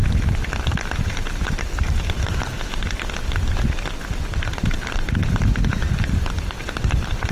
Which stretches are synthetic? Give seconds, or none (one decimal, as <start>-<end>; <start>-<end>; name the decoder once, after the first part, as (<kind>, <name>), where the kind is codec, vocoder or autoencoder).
none